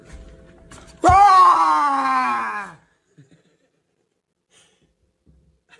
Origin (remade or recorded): recorded